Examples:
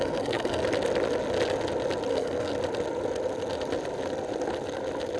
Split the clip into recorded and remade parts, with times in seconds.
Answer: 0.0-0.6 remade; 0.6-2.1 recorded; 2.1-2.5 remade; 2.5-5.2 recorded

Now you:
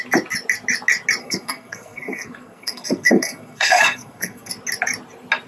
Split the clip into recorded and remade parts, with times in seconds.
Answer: 0.0-1.2 recorded; 1.2-4.5 remade; 4.5-5.5 recorded

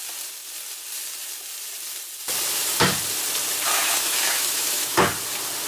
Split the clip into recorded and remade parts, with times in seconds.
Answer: 0.0-3.7 recorded; 3.7-5.1 remade; 5.1-5.7 recorded